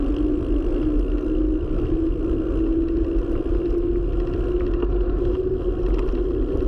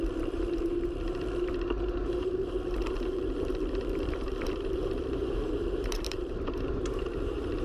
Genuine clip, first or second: first